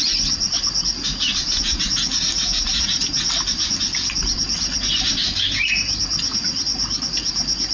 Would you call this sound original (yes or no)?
yes